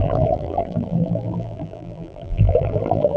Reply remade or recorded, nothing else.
remade